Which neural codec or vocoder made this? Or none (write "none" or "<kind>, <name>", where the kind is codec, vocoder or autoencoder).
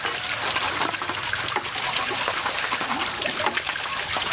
none